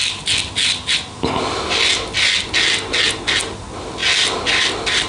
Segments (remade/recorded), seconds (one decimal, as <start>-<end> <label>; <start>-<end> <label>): 0.0-5.1 recorded